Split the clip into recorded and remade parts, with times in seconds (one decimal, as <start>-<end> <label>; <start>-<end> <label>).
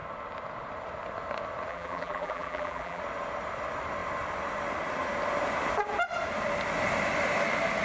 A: 0.0-1.7 recorded; 1.7-3.0 remade; 3.0-7.8 recorded